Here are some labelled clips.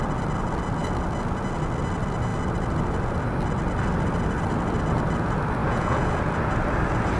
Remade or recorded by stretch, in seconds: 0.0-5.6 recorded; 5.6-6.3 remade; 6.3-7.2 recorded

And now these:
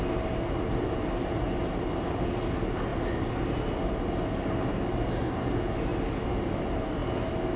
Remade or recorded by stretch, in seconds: 0.0-7.6 recorded

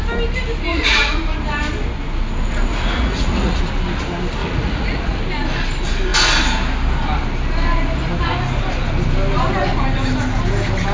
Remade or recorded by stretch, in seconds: 0.0-0.7 recorded; 0.7-1.2 remade; 1.2-2.7 recorded; 2.7-3.6 remade; 3.6-4.4 recorded; 4.4-5.2 remade; 5.2-10.9 recorded

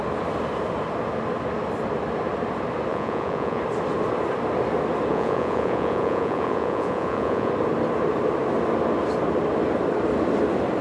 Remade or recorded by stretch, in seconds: 0.0-2.9 recorded; 2.9-3.6 remade; 3.6-5.1 recorded; 5.1-7.5 remade; 7.5-10.8 recorded

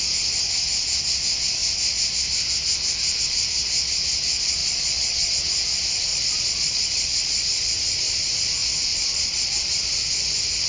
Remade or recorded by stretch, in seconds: 0.0-4.6 recorded; 4.6-5.3 remade; 5.3-6.1 recorded; 6.1-8.3 remade; 8.3-8.9 recorded; 8.9-9.5 remade; 9.5-10.7 recorded

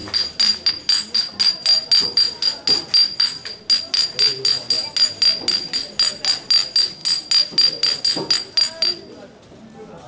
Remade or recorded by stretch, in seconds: 0.0-10.1 recorded